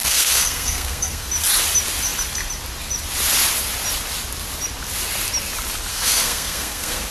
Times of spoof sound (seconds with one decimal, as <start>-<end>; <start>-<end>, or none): 0.0-1.3; 5.9-7.1